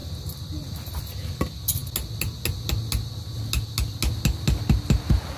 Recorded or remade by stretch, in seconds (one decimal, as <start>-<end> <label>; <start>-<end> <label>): 0.0-5.4 recorded